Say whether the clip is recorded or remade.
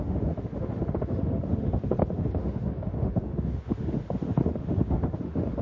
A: remade